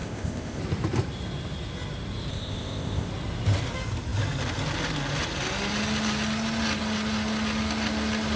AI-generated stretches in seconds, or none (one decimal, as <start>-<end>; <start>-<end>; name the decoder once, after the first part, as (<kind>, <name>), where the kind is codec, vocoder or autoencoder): 0.0-0.6 (codec, ZipCodec); 2.3-3.1

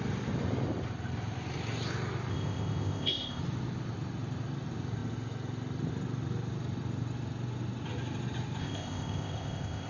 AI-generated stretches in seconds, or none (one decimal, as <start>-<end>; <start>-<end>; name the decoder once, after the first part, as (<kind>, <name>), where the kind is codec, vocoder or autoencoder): 2.3-3.4 (codec, ZipCodec); 8.6-9.9

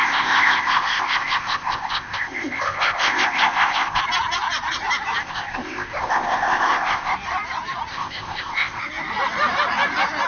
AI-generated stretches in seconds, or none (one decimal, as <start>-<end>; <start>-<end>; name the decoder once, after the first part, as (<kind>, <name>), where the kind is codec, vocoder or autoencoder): 0.0-4.0 (codec, ZipCodec); 5.2-7.1; 7.9-8.8

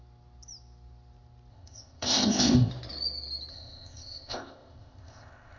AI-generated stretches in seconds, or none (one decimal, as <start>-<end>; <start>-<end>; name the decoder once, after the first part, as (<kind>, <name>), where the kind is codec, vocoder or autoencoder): 1.5-2.7 (codec, ZipCodec); 3.5-5.6

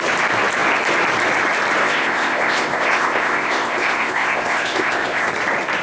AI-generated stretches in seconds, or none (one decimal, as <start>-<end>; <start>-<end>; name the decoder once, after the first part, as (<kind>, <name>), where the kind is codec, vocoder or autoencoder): 1.8-5.3 (codec, ZipCodec)

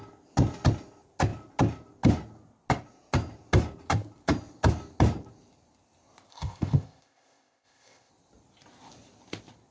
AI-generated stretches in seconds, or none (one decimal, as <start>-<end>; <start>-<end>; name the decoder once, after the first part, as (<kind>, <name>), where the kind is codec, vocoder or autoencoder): 6.3-8.1 (codec, ZipCodec)